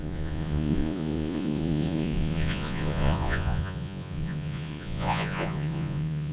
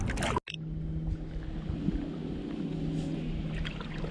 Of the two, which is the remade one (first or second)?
first